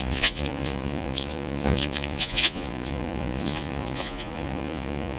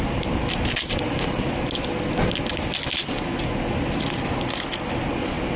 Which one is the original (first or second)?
second